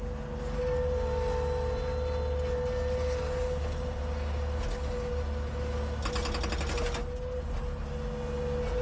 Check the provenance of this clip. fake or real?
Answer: real